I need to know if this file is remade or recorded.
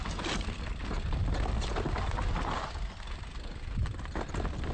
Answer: recorded